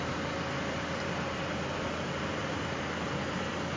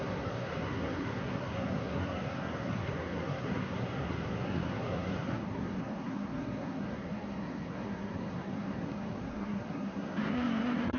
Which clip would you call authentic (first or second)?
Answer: first